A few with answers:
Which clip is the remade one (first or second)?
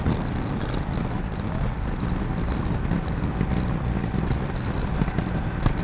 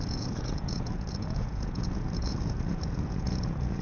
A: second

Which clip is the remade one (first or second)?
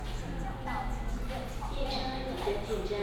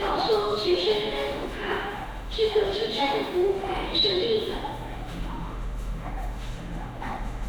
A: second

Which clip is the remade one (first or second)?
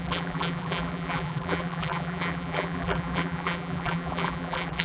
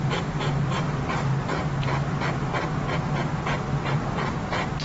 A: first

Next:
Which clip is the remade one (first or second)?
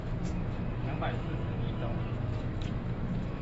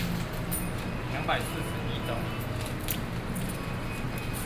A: first